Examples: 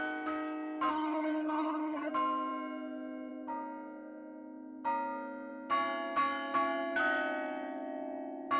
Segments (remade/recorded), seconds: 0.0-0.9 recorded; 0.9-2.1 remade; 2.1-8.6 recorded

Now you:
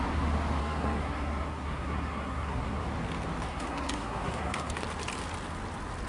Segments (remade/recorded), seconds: 0.0-0.6 recorded; 0.6-2.8 remade; 2.8-3.5 recorded; 3.5-4.7 remade; 4.7-6.1 recorded

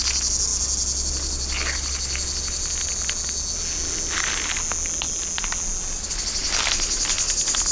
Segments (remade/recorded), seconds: 0.0-7.7 recorded

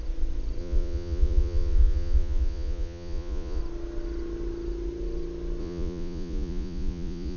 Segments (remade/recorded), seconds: 0.0-0.6 recorded; 0.6-3.6 remade; 3.6-5.6 recorded; 5.6-7.4 remade

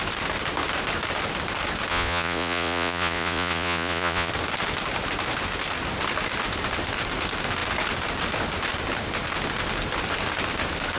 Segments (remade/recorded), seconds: 0.0-1.9 recorded; 1.9-4.3 remade; 4.3-11.0 recorded

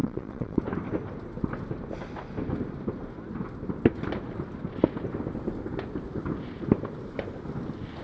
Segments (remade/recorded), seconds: 0.0-0.6 remade; 0.6-8.0 recorded

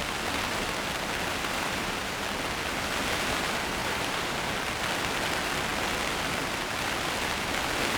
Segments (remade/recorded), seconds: 0.0-1.3 recorded; 1.3-2.2 remade; 2.2-3.8 recorded; 3.8-4.4 remade; 4.4-8.0 recorded

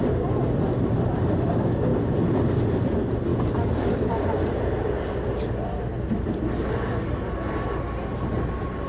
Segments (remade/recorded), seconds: 0.0-8.9 recorded